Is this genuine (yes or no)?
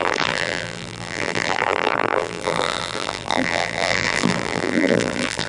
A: no